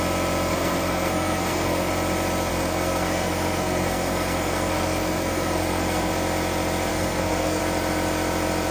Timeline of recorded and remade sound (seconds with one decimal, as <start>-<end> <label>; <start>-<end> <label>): 0.0-0.5 recorded; 0.5-1.9 remade; 1.9-2.5 recorded; 2.5-6.1 remade; 6.1-6.9 recorded; 6.9-7.6 remade; 7.6-8.7 recorded